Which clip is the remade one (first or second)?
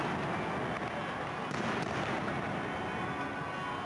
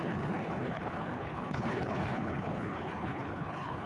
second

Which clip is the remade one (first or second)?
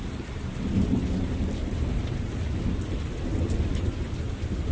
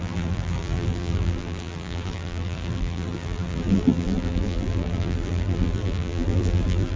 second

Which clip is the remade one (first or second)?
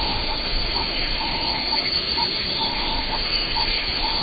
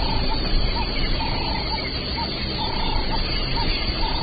first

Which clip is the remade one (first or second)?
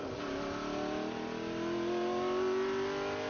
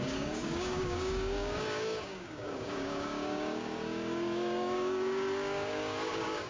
second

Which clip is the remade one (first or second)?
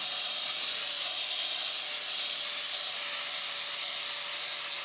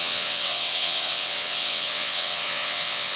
second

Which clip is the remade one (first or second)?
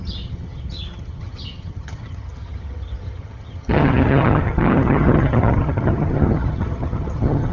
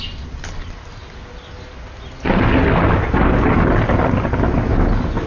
first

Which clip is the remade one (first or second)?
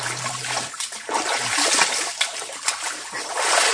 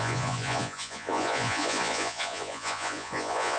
second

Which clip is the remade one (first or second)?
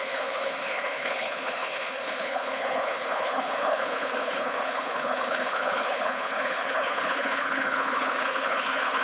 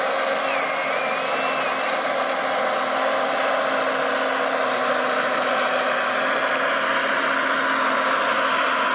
first